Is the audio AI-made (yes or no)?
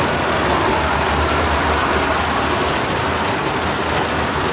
no